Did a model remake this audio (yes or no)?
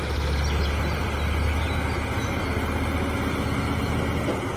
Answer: no